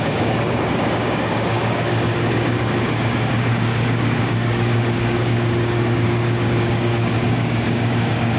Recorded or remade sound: remade